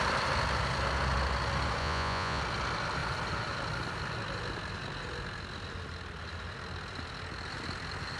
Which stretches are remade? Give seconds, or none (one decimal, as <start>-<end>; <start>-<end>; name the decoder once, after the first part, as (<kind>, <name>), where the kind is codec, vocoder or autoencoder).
1.8-2.4 (vocoder, Vocos)